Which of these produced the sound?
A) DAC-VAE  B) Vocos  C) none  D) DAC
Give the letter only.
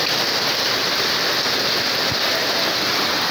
C